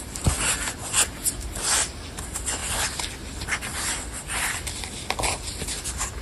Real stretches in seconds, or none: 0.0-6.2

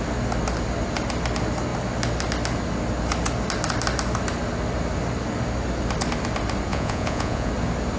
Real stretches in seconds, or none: 0.0-6.7; 7.5-8.0

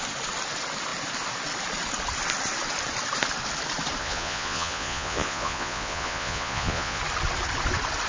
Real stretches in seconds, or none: 0.0-4.0; 7.0-8.1

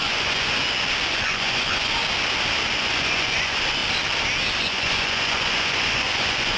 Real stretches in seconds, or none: 0.6-1.1; 2.0-2.8; 3.8-4.6